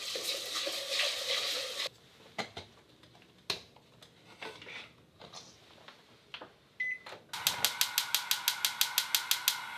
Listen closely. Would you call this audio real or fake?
real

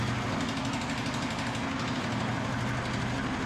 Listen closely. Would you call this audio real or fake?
real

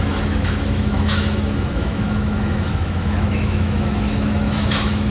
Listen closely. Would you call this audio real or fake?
fake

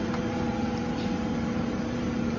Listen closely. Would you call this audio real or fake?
fake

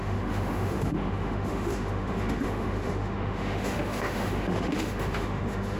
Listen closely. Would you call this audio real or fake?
fake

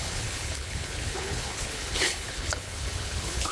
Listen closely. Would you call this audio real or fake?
fake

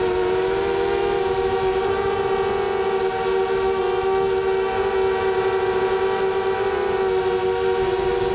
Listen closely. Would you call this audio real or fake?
real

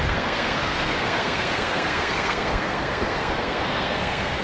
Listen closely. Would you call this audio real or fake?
fake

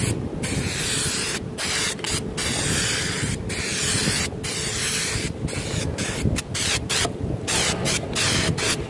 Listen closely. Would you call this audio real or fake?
real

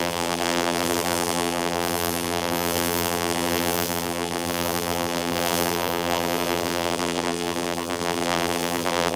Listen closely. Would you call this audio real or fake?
fake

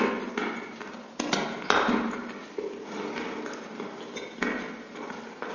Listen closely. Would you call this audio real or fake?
real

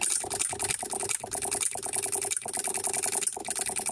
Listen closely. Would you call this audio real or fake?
real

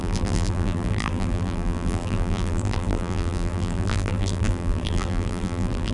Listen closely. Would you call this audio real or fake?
fake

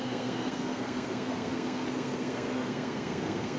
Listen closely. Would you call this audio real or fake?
fake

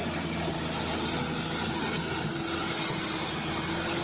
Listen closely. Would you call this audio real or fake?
real